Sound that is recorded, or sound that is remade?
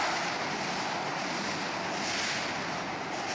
recorded